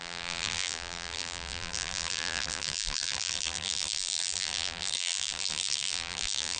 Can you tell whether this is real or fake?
fake